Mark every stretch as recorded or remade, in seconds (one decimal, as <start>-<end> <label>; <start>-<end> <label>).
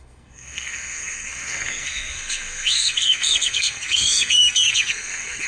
0.0-5.5 remade